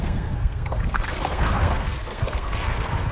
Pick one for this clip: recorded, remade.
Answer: remade